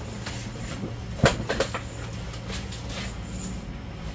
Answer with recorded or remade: recorded